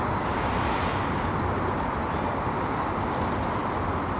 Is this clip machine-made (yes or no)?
no